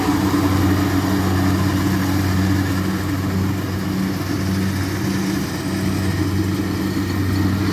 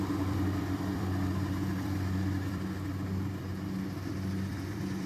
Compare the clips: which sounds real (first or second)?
first